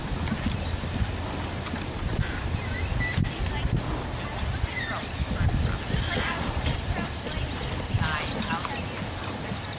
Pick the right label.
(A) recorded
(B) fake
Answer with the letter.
A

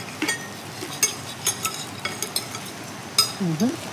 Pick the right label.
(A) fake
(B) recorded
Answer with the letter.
B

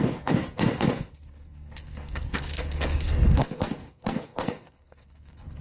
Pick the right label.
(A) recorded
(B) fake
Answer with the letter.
B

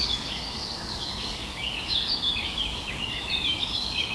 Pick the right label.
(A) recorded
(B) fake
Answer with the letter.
B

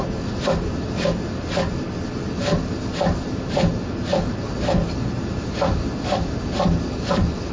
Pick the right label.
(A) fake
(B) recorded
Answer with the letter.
B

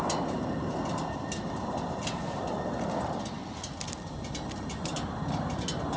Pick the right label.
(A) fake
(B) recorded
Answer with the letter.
B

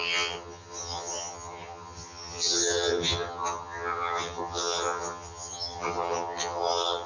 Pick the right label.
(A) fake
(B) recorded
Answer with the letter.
A